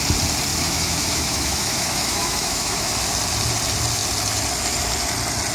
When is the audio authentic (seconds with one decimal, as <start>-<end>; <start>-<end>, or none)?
0.0-0.5; 2.9-5.5